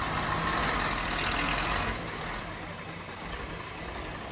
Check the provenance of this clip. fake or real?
real